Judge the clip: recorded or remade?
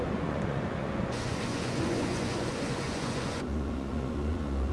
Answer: remade